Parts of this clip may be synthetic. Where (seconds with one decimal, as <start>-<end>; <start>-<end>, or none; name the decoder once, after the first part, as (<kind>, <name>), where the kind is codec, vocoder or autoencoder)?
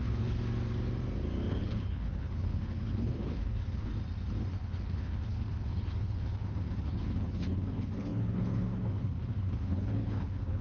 0.0-0.4 (codec, HILCodec); 1.5-3.9; 4.5-10.6